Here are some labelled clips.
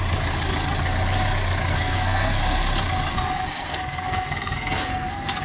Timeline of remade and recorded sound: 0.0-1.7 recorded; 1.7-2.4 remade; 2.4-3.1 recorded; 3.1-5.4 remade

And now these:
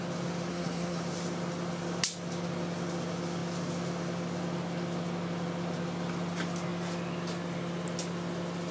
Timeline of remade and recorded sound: 0.0-0.5 recorded; 0.5-1.0 remade; 1.0-8.7 recorded

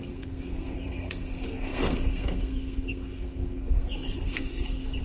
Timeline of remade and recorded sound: 0.0-5.0 remade

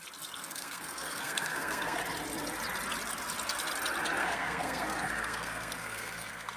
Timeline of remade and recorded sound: 0.0-0.4 recorded; 0.4-2.0 remade; 2.0-4.2 recorded; 4.2-6.6 remade